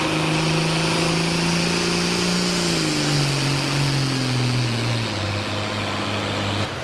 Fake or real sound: real